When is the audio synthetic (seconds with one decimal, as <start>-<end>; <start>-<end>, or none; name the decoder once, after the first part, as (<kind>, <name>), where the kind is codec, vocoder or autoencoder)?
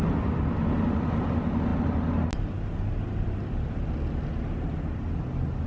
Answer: none